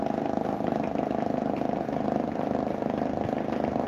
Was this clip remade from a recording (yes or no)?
no